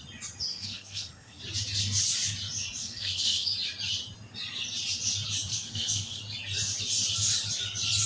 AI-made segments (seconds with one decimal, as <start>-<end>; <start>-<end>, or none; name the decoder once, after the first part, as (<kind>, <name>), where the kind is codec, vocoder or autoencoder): 0.5-1.4 (codec, SNAC); 2.8-3.5; 5.5-6.2